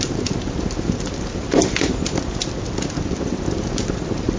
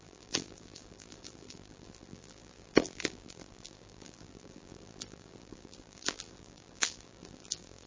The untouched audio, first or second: first